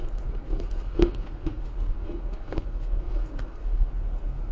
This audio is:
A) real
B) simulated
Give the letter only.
B